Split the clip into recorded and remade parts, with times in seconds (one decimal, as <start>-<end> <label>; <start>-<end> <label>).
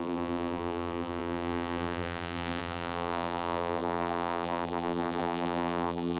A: 0.0-6.2 remade